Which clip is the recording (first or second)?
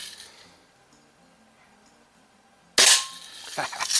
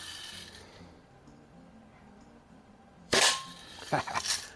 first